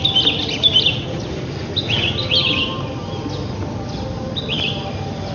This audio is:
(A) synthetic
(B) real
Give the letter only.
B